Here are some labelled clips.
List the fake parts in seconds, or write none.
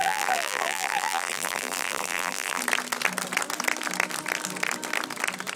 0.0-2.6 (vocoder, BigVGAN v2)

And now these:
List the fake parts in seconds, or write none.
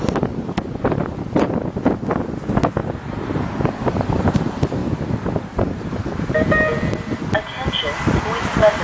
none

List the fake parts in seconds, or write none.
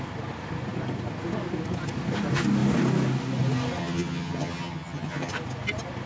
3.8-5.3 (vocoder, HiFi-GAN)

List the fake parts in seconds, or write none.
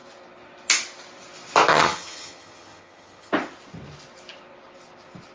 1.7-3.3 (vocoder, HiFi-GAN)